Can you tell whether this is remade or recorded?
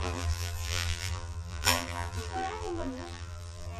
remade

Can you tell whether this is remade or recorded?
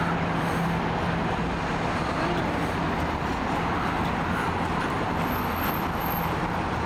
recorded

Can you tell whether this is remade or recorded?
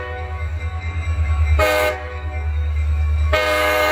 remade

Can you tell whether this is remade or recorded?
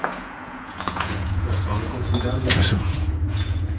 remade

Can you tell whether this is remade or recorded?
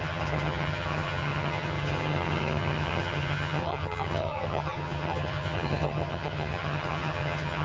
remade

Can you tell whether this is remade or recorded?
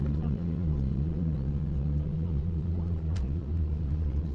remade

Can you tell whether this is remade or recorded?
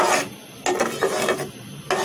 recorded